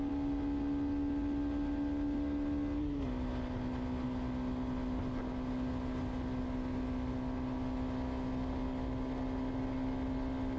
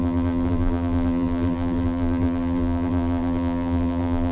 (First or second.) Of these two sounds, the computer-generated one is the second